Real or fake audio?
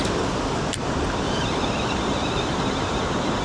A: real